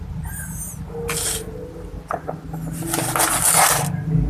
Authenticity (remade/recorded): recorded